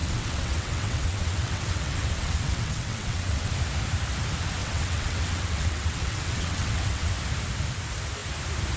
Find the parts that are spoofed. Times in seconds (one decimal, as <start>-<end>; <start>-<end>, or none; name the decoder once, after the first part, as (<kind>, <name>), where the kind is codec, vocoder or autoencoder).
0.0-3.5 (vocoder, WaveNeXt); 4.6-7.1